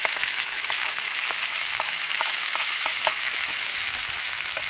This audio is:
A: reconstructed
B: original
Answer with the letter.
A